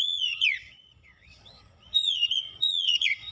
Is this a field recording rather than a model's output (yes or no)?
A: no